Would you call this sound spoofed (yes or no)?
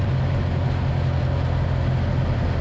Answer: no